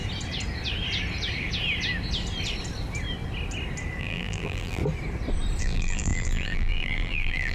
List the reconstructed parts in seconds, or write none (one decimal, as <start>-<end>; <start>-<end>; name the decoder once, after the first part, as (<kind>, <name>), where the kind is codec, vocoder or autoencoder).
4.0-4.8 (vocoder, BigVGAN v2); 5.6-7.5